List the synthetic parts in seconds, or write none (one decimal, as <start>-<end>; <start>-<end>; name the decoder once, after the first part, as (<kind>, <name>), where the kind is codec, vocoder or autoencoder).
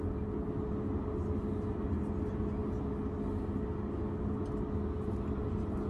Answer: none